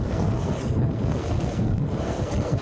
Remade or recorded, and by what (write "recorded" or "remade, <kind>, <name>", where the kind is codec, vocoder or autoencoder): remade, codec, SNAC